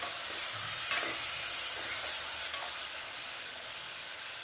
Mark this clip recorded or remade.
recorded